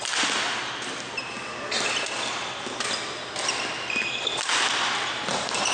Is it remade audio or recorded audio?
recorded